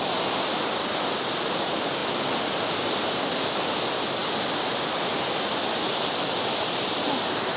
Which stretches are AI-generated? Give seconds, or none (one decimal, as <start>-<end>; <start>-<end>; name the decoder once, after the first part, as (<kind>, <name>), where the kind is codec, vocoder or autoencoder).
none